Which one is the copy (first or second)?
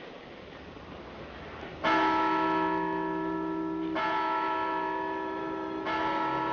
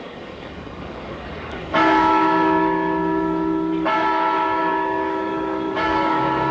second